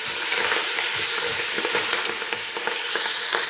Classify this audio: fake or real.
fake